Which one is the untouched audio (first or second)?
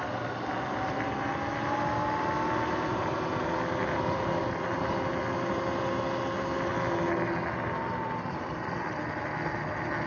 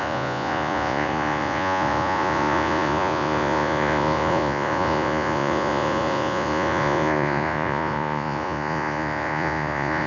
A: first